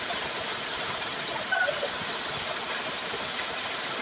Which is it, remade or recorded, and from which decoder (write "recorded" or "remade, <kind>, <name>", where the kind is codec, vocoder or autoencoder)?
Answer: recorded